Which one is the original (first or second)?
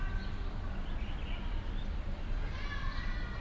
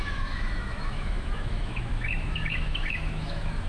first